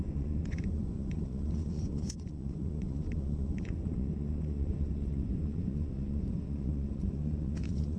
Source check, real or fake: fake